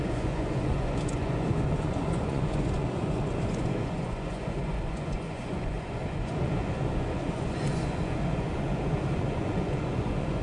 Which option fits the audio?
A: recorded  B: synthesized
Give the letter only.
B